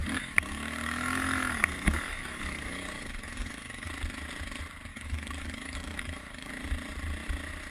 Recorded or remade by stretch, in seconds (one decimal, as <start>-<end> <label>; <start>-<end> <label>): 0.0-3.9 remade; 3.9-4.9 recorded; 4.9-6.5 remade; 6.5-7.7 recorded

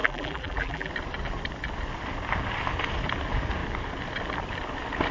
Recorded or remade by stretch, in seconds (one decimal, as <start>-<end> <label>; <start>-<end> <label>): 0.0-0.9 remade; 0.9-5.1 recorded

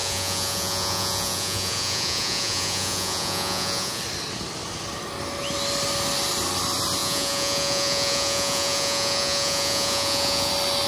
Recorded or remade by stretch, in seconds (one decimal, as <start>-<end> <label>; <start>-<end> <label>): 0.0-4.0 remade; 4.0-7.0 recorded; 7.0-10.5 remade; 10.5-10.9 recorded

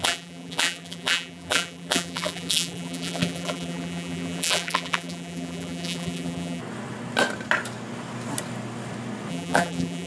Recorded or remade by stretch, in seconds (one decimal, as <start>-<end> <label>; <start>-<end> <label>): 0.0-6.6 remade; 6.6-9.3 recorded; 9.3-10.1 remade

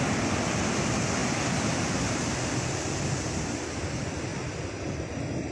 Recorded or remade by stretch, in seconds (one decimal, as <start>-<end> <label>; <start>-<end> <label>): 0.0-5.5 recorded

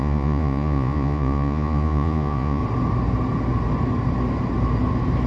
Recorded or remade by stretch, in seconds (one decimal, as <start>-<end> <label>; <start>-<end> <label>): 0.0-2.6 remade; 2.6-5.3 recorded

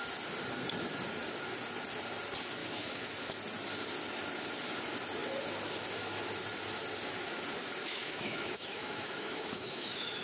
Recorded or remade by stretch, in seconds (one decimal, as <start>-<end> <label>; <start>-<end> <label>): 0.0-2.6 recorded; 2.6-3.1 remade; 3.1-7.8 recorded; 7.8-10.2 remade

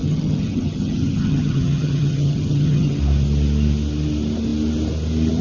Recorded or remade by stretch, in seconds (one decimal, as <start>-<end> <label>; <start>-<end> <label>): 0.0-3.0 remade; 3.0-5.4 recorded